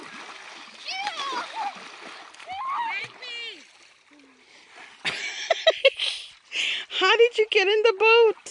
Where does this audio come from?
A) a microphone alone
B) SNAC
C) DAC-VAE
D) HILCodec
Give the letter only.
A